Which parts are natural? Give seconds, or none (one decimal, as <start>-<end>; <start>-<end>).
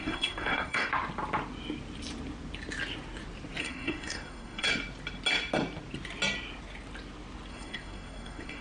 0.9-3.6; 4.7-7.5